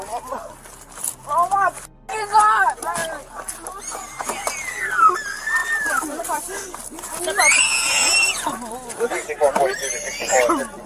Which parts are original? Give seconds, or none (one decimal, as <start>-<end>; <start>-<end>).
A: 0.0-5.6; 7.2-10.9